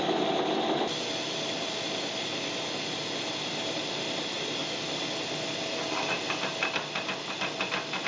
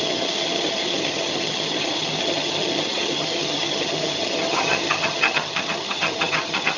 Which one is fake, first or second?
second